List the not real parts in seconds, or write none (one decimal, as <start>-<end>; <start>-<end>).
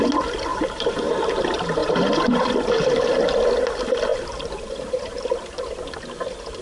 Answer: 0.5-1.1; 1.8-2.5